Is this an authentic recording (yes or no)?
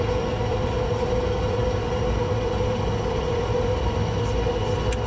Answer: yes